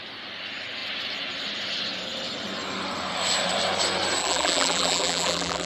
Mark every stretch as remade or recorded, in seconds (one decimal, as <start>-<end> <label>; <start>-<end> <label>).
0.0-4.2 recorded; 4.2-5.7 remade